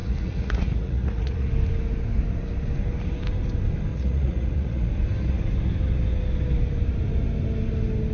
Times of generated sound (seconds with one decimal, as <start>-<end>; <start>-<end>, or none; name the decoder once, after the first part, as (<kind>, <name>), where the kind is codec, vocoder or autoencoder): 0.0-1.5 (vocoder, Vocos); 3.9-4.9